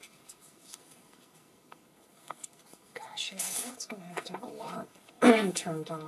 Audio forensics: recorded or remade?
remade